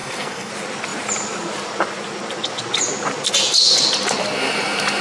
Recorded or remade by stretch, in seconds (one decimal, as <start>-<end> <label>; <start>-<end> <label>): 0.0-0.5 remade; 0.5-5.0 recorded